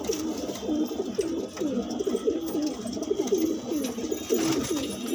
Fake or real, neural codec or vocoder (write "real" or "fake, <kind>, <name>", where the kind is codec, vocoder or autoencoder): real